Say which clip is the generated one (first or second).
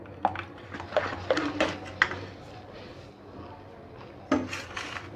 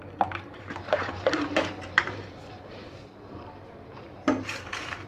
second